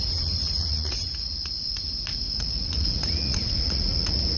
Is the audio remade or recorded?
remade